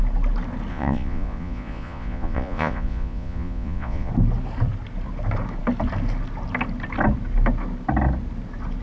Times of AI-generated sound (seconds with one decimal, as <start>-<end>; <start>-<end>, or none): 0.7-4.1